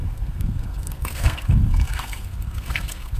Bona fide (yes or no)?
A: no